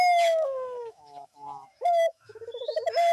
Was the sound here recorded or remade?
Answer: remade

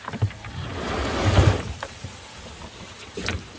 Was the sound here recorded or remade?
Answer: remade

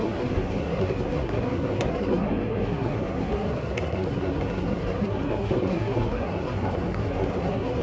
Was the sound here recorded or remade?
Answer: remade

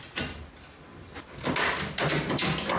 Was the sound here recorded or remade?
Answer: recorded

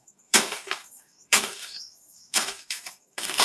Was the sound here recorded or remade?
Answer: remade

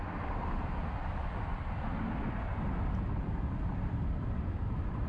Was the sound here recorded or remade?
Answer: remade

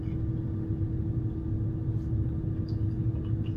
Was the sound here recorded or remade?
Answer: recorded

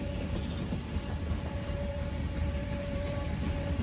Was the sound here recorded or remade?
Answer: remade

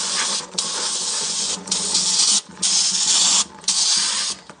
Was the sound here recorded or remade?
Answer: remade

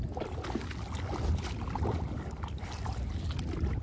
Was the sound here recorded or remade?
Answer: recorded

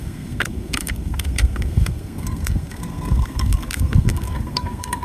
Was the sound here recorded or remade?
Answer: remade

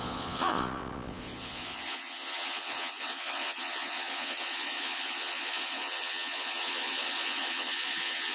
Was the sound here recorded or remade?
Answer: remade